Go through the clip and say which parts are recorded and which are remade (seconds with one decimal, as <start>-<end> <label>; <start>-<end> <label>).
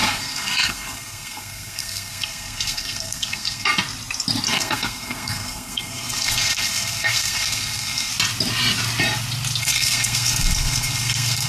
0.0-3.7 remade; 3.7-4.5 recorded; 4.5-8.1 remade; 8.1-9.6 recorded; 9.6-11.5 remade